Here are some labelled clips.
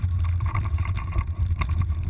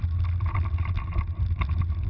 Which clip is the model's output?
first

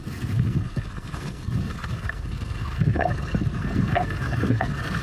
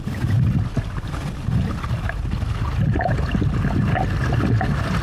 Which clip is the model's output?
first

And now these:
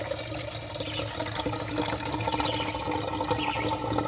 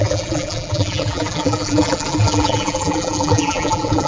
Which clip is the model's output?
second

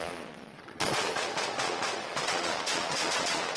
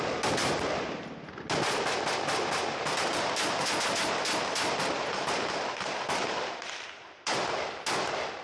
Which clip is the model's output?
first